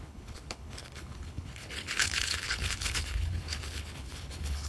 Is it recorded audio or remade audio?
remade